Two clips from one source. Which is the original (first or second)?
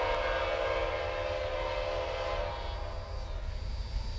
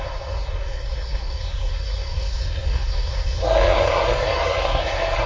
first